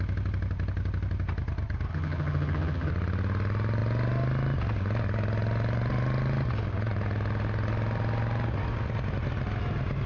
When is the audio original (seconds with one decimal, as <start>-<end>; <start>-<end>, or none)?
0.0-1.9; 2.9-10.1